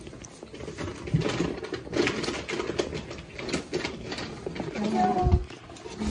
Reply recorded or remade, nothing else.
recorded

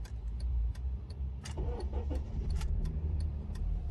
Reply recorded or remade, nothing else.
remade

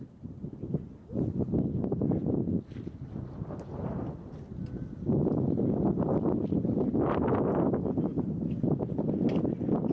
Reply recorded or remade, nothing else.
recorded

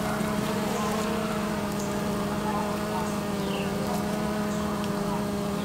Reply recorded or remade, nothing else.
recorded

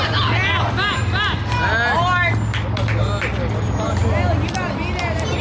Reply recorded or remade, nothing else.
recorded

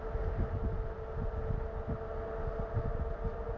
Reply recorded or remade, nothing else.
recorded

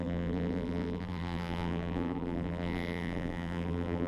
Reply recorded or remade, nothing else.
remade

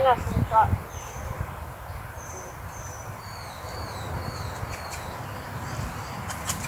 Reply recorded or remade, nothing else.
recorded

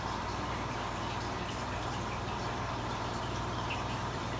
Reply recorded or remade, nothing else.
remade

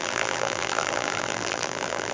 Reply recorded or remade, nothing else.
remade